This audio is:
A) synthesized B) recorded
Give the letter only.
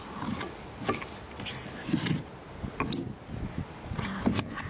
B